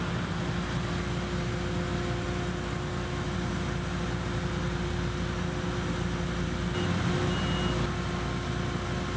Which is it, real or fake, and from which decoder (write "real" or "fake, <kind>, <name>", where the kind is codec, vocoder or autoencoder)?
real